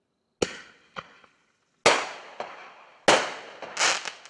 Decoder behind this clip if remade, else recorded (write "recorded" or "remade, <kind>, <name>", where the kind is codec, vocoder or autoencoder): recorded